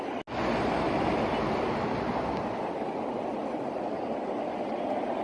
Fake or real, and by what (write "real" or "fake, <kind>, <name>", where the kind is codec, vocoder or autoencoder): real